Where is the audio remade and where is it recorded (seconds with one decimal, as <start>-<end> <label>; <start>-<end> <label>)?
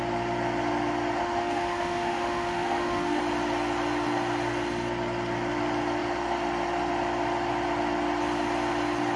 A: 0.0-1.2 recorded; 1.2-3.2 remade; 3.2-9.2 recorded